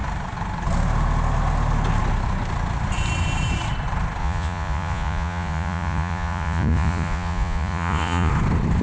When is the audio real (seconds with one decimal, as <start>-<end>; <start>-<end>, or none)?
0.0-4.2; 8.3-8.8

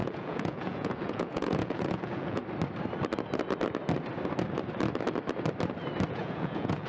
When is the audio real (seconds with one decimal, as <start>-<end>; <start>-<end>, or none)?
2.4-6.1

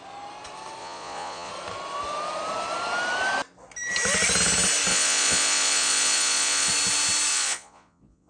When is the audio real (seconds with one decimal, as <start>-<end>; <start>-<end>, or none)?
0.0-0.8; 1.5-4.9; 6.7-7.3

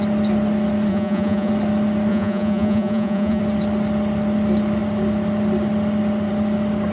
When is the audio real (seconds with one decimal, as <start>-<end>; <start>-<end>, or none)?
0.0-0.9; 1.5-2.1; 3.4-6.9